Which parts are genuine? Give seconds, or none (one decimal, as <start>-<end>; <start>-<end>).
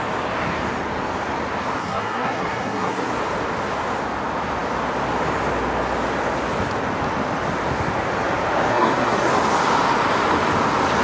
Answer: 0.0-1.8; 3.1-8.7; 9.3-11.0